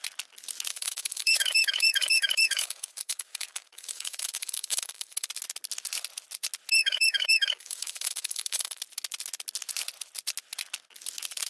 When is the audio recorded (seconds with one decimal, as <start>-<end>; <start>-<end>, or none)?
0.0-0.7; 5.3-6.8; 8.8-11.5